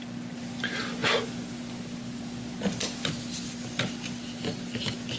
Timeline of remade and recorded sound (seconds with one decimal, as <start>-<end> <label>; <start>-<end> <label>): 0.0-5.2 recorded